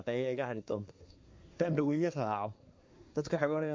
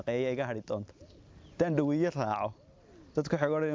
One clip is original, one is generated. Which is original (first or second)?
second